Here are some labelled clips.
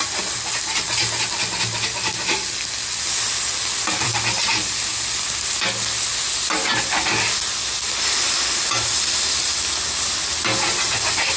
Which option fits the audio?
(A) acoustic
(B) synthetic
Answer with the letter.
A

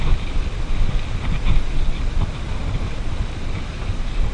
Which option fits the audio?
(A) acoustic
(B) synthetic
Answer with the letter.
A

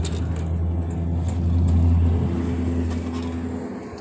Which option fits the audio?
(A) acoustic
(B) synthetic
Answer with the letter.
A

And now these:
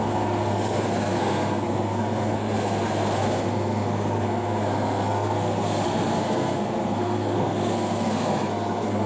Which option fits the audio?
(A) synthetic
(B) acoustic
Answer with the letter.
A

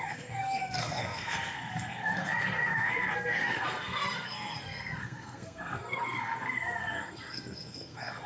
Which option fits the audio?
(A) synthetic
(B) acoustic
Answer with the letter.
A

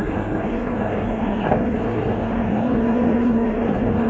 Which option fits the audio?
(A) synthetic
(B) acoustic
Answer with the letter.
A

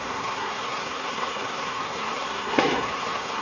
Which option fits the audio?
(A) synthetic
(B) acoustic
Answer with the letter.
A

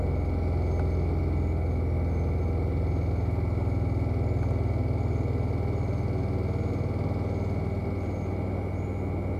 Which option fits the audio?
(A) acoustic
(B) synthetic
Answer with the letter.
A